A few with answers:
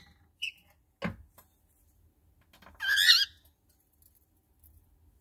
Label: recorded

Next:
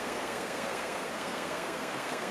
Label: remade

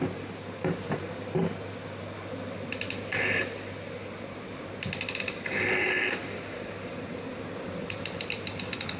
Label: recorded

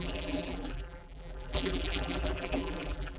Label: remade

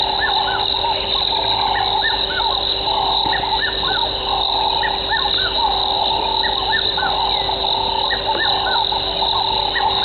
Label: recorded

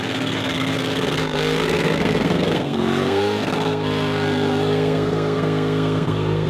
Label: remade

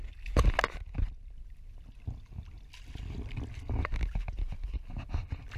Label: recorded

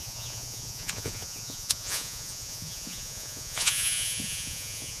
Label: remade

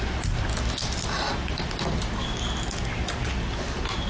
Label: recorded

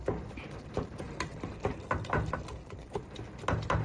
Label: recorded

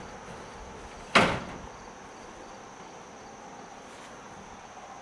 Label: recorded